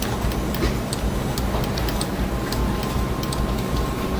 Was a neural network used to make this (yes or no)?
no